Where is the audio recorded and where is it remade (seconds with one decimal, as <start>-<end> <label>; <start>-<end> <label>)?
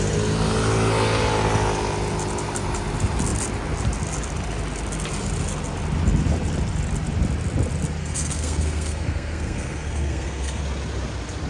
0.0-8.0 recorded; 8.0-10.6 remade; 10.6-11.5 recorded